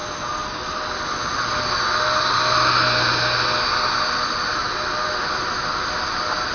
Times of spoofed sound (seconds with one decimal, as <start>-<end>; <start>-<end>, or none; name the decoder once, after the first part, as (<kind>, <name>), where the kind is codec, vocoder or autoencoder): none